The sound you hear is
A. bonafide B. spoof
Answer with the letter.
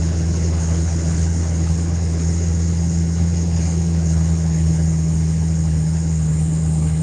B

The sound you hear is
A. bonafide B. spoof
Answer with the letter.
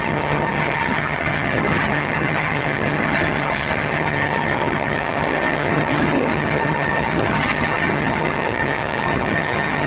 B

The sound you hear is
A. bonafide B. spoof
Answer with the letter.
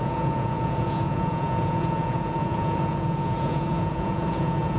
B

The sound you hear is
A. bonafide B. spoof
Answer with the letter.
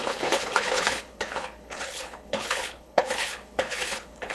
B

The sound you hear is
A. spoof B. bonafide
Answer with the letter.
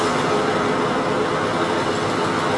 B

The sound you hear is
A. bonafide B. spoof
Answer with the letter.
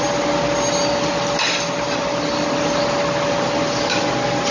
A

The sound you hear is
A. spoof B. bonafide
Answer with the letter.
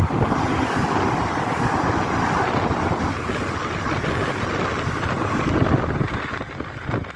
B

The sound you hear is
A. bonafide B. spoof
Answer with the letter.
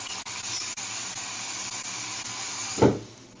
A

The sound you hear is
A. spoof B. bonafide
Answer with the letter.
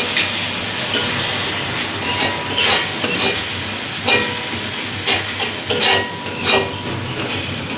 B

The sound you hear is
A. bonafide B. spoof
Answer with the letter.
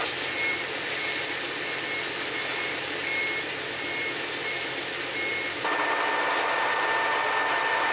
A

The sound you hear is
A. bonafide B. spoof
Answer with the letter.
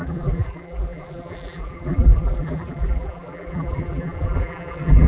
B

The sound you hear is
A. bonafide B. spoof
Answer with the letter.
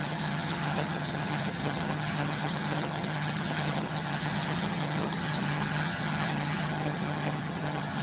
B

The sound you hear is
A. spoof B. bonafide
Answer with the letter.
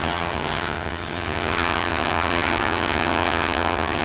A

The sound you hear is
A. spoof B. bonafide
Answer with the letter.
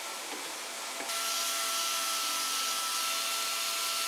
B